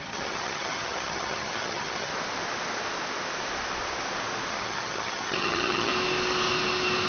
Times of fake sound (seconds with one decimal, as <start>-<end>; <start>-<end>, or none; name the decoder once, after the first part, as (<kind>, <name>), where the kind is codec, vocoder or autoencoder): 0.0-2.1 (vocoder, HiFi-GAN); 4.5-5.9